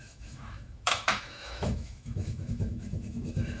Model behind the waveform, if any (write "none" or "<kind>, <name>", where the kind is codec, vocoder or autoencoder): autoencoder, DAC-VAE